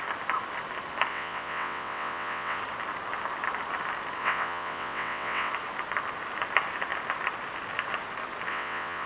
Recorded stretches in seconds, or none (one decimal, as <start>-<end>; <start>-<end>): 0.0-1.1; 2.6-4.2; 5.5-8.5

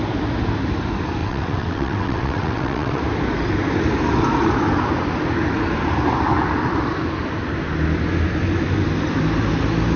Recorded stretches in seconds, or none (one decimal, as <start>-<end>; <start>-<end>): 0.0-1.2; 3.0-10.0

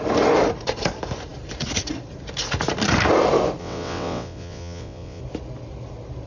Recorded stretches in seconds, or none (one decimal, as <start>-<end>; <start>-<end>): 0.0-3.6; 5.2-6.3

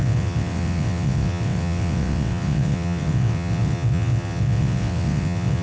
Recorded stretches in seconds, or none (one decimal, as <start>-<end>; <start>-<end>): none